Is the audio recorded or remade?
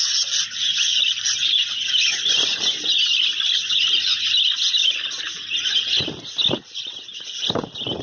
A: recorded